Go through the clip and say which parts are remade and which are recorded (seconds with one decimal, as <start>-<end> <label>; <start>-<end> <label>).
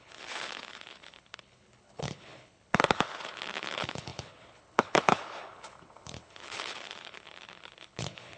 0.0-8.4 remade